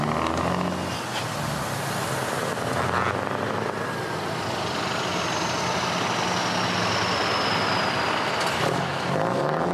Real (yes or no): yes